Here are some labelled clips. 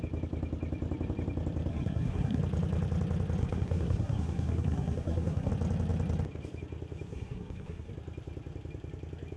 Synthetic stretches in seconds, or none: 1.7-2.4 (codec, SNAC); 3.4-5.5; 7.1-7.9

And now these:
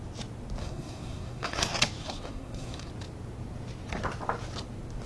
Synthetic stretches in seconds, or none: 0.6-1.6 (codec, SNAC); 2.0-2.9

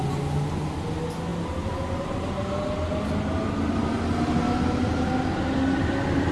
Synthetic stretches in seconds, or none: none